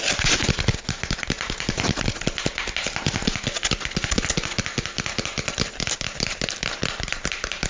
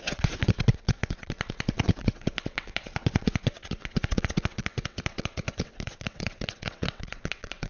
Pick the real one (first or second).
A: first